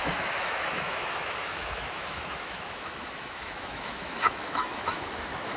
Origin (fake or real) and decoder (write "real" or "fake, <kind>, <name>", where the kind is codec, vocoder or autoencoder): fake, autoencoder, DAC-VAE